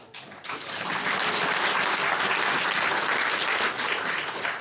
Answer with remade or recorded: recorded